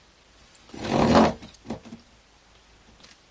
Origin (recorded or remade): remade